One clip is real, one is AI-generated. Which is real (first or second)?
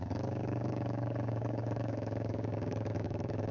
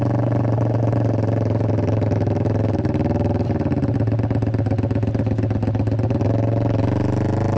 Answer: second